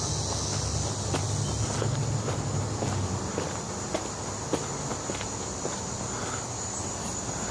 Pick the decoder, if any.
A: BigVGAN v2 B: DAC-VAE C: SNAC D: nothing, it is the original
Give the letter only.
D